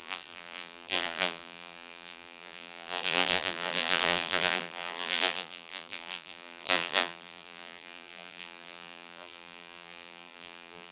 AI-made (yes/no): yes